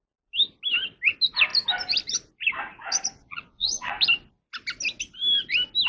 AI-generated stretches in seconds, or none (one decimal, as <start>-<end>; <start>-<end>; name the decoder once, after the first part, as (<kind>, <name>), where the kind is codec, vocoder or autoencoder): 3.2-3.9 (vocoder, Vocos)